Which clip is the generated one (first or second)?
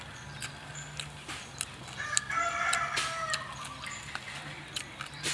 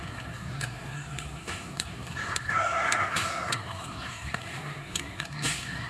second